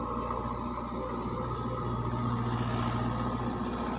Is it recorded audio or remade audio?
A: recorded